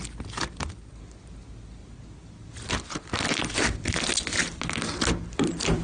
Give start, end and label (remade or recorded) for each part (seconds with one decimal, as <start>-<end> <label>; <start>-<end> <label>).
0.0-5.8 recorded